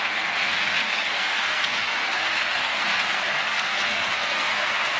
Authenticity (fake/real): fake